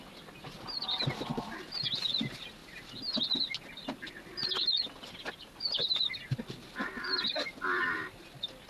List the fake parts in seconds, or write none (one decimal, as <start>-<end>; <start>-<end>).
none